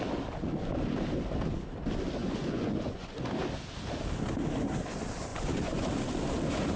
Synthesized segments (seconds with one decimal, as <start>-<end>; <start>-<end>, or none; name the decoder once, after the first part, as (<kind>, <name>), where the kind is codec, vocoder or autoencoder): 2.2-3.3 (vocoder, Vocos); 5.3-5.8